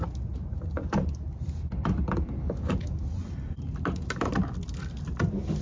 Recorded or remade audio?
recorded